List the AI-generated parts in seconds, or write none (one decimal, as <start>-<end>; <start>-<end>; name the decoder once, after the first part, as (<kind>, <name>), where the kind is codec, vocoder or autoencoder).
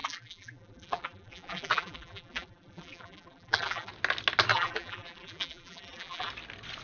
0.0-3.9 (vocoder, BigVGAN v2); 4.5-6.3